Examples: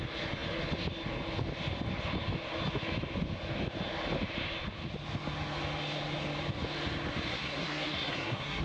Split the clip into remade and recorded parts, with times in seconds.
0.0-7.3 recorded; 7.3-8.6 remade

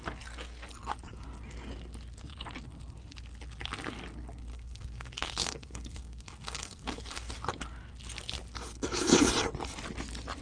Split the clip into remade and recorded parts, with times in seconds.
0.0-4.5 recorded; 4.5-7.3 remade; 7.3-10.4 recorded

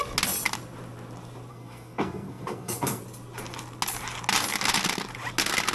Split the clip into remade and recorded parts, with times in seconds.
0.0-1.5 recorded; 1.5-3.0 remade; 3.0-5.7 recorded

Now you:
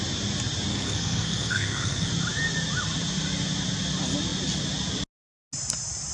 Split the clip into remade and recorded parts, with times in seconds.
0.0-0.7 recorded; 0.7-2.1 remade; 2.1-6.1 recorded